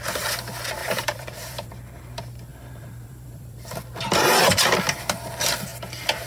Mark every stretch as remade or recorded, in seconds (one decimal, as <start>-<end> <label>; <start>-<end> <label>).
0.0-0.8 recorded; 0.8-1.8 remade; 1.8-2.5 recorded; 2.5-4.6 remade; 4.6-5.7 recorded; 5.7-6.3 remade